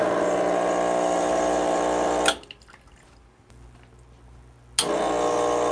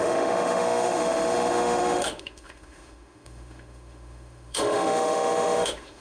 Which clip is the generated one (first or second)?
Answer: second